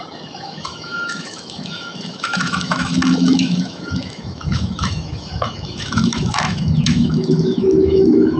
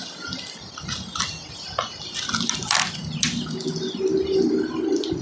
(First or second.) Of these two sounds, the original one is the second